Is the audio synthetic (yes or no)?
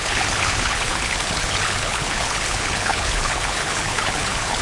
yes